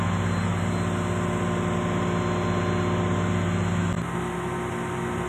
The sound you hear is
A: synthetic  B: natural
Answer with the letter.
B